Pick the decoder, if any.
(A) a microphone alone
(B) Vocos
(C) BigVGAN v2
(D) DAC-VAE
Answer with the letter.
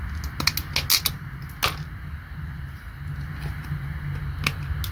A